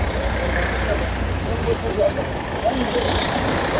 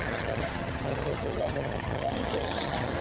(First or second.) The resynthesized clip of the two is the second